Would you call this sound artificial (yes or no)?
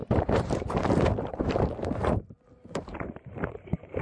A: yes